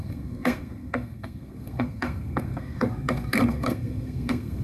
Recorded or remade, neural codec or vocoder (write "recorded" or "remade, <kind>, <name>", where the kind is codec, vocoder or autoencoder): remade, codec, SNAC